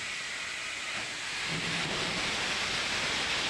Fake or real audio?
real